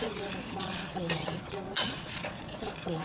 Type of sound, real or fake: fake